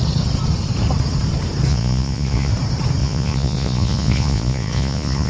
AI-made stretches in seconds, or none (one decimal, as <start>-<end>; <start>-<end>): 1.7-2.5; 3.0-5.3